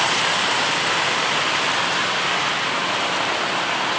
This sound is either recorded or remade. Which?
recorded